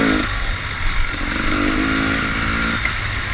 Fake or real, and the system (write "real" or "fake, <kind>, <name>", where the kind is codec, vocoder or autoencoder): real